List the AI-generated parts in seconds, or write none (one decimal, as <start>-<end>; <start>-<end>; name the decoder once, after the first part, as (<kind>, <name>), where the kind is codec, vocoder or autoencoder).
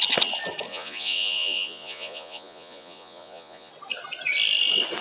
0.7-3.7 (vocoder, Vocos)